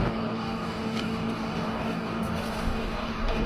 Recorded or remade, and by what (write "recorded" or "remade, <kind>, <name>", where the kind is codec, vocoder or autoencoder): remade, codec, DAC